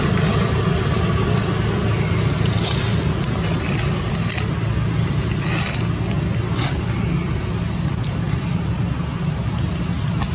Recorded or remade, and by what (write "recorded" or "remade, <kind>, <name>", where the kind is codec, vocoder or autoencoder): recorded